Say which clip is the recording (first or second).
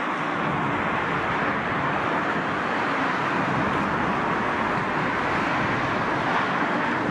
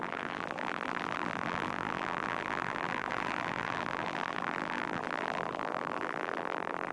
first